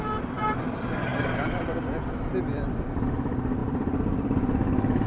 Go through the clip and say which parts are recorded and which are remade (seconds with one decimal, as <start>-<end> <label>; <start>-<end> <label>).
0.0-5.1 recorded